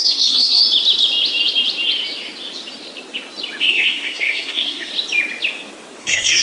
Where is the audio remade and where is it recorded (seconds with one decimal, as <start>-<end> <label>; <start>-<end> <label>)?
0.0-0.6 remade; 0.6-3.6 recorded; 3.6-4.9 remade; 4.9-6.0 recorded; 6.0-6.4 remade